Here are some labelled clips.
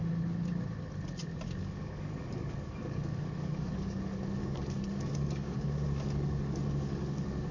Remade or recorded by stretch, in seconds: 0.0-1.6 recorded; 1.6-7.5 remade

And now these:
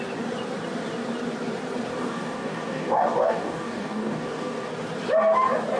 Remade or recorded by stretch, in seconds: 0.0-1.9 recorded; 1.9-4.7 remade; 4.7-5.8 recorded

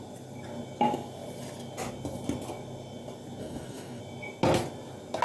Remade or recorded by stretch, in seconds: 0.0-3.4 recorded; 3.4-4.0 remade; 4.0-5.2 recorded

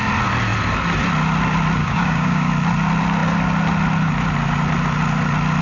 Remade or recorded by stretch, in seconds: 0.0-1.8 recorded; 1.8-2.5 remade; 2.5-5.6 recorded

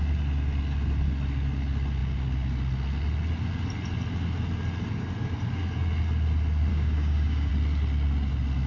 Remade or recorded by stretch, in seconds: 0.0-6.7 recorded; 6.7-7.5 remade; 7.5-8.7 recorded

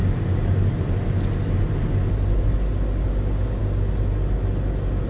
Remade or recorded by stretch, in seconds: 0.0-3.1 recorded; 3.1-3.6 remade; 3.6-5.1 recorded

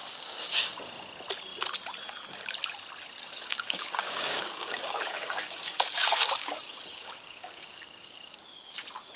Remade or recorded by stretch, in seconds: 0.0-0.8 remade; 0.8-3.2 recorded; 3.2-8.4 remade; 8.4-9.2 recorded

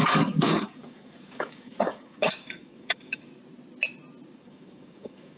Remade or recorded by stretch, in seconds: 0.0-3.3 remade; 3.3-4.4 recorded; 4.4-5.4 remade